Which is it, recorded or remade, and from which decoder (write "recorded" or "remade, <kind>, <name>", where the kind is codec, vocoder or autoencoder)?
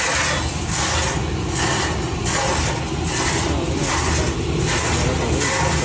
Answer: recorded